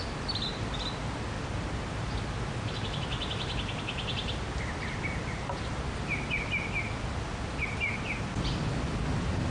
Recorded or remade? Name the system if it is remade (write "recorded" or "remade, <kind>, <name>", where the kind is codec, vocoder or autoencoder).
recorded